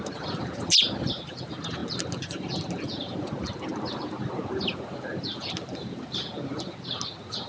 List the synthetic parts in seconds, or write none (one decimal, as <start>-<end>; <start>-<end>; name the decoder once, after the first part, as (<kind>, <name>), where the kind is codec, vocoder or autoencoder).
none